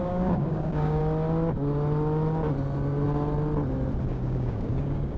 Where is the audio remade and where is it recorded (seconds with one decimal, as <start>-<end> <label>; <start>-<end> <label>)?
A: 0.0-1.0 remade; 1.0-4.1 recorded; 4.1-5.2 remade